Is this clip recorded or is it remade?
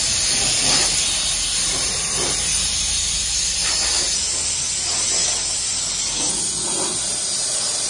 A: recorded